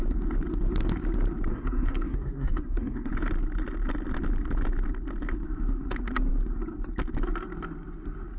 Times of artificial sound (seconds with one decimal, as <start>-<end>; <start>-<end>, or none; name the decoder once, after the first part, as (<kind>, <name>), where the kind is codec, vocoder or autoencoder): 1.5-3.1 (codec, SNAC)